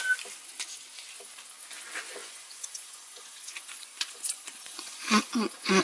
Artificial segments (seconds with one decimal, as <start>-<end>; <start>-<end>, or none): 2.2-5.8